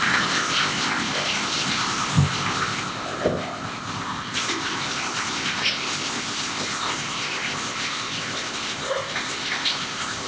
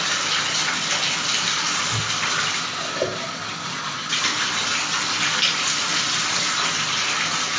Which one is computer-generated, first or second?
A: first